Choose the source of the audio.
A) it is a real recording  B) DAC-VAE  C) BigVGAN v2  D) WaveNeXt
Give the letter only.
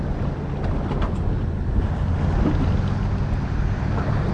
A